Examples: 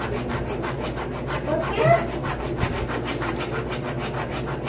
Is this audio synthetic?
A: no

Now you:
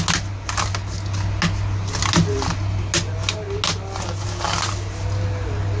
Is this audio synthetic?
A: no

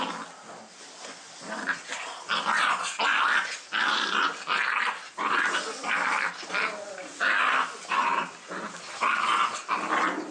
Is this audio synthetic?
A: no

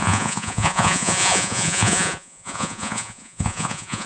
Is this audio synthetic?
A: yes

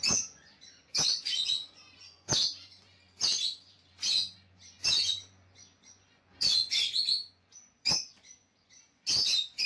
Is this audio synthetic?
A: yes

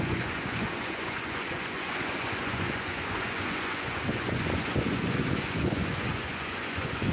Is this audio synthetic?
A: yes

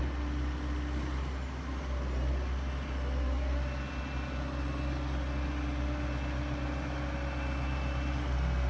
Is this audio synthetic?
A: no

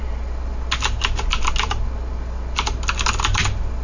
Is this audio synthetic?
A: no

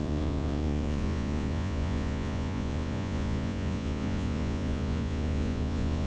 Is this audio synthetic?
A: yes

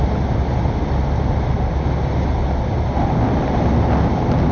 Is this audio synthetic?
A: no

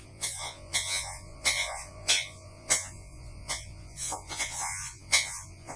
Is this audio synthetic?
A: yes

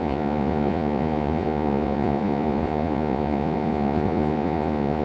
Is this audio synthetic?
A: yes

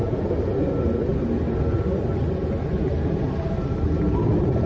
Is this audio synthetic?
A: no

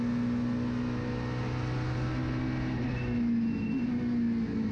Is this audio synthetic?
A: no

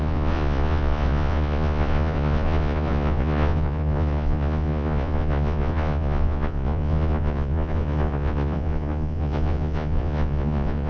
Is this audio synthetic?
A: yes